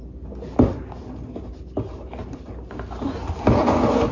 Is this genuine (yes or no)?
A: yes